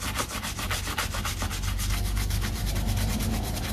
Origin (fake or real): real